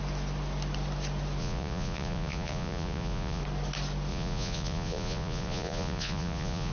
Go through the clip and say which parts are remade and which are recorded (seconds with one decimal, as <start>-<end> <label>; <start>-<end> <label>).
0.0-1.4 recorded; 1.4-3.4 remade; 3.4-4.1 recorded; 4.1-6.7 remade